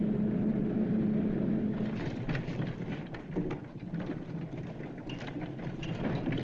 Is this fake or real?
real